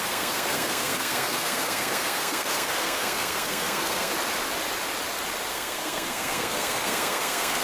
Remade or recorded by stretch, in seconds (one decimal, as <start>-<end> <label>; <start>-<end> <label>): 0.0-4.1 remade; 4.1-5.5 recorded; 5.5-7.6 remade